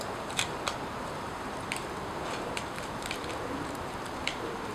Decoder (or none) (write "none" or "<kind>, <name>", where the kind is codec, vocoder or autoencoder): vocoder, BigVGAN v2